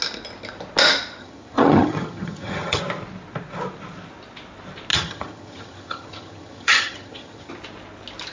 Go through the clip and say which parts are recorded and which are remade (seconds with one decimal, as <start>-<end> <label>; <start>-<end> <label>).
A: 0.0-1.2 recorded; 1.2-2.8 remade; 2.8-4.9 recorded; 4.9-7.5 remade; 7.5-8.3 recorded